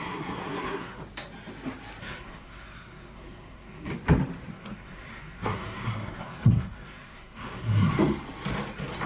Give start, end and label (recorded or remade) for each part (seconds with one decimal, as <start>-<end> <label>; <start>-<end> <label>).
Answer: 0.0-1.0 remade; 1.0-2.0 recorded; 2.0-3.9 remade; 3.9-4.5 recorded; 4.5-7.9 remade; 7.9-9.1 recorded

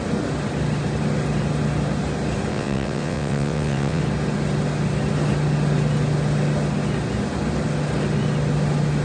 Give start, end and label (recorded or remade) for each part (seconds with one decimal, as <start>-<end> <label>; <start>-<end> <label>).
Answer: 0.0-2.5 recorded; 2.5-4.0 remade; 4.0-9.0 recorded

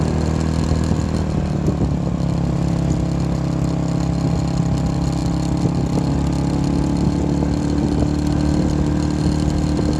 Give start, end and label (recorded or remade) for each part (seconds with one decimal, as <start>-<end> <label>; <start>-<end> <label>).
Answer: 0.0-10.0 recorded

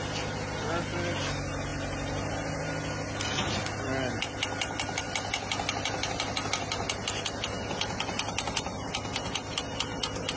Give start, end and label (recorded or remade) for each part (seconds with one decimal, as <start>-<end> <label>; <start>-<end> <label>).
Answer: 0.0-10.4 recorded